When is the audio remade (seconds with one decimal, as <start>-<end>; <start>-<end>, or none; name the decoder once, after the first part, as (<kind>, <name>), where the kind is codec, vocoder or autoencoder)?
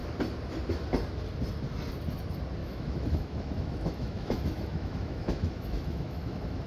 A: 2.6-6.7 (autoencoder, DAC-VAE)